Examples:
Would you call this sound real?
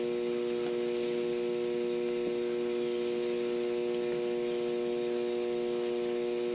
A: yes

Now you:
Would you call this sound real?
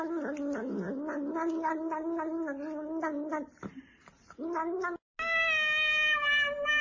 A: yes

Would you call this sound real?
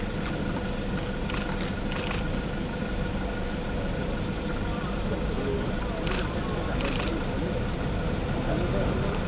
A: yes